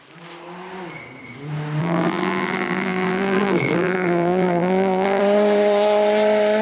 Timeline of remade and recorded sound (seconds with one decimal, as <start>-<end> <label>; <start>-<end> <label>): 0.0-1.8 recorded; 1.8-5.2 remade; 5.2-6.6 recorded